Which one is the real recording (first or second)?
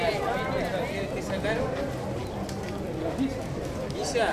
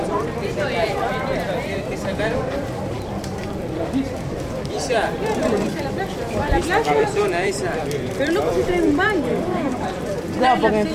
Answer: first